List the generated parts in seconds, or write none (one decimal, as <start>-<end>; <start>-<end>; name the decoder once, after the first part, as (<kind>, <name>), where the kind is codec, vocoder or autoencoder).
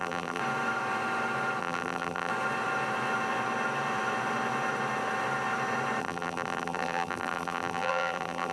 0.0-0.4 (vocoder, BigVGAN v2); 1.6-2.3; 6.0-8.5